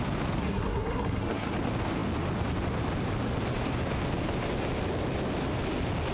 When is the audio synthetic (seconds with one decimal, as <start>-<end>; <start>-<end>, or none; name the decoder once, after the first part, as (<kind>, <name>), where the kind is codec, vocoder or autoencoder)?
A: 0.4-1.5 (codec, SNAC)